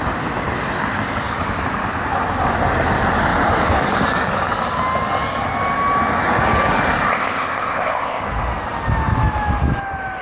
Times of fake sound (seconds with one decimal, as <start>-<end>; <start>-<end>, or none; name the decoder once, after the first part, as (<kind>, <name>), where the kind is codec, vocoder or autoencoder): 7.1-8.2 (codec, ZipCodec)

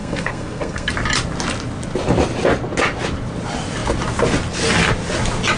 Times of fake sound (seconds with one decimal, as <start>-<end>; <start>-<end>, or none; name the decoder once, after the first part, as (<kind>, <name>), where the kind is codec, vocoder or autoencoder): 0.0-0.9 (codec, SNAC)

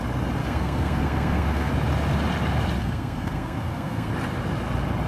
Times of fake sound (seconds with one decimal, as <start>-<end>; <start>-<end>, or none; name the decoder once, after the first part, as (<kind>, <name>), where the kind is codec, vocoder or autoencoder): 0.4-1.7 (codec, SNAC); 2.8-4.1